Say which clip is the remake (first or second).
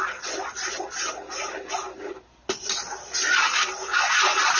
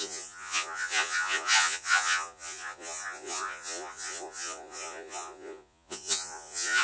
second